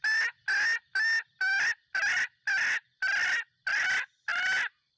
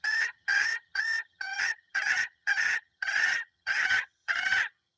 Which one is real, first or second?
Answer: first